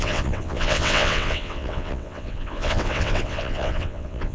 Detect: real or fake fake